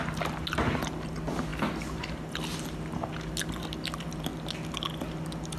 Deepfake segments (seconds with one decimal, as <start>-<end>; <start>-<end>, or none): none